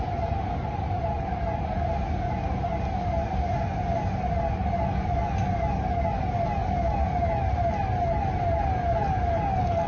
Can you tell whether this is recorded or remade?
recorded